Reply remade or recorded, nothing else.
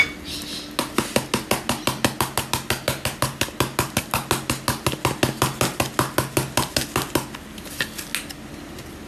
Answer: recorded